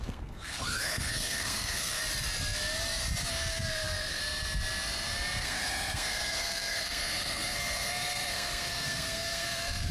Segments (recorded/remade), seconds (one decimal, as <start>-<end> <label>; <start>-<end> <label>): 0.0-2.0 remade; 2.0-3.3 recorded; 3.3-4.2 remade; 4.2-5.4 recorded; 5.4-9.9 remade